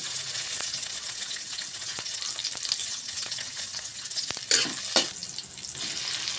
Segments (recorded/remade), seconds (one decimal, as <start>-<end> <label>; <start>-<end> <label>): 0.0-2.2 remade; 2.2-2.8 recorded; 2.8-4.3 remade; 4.3-6.4 recorded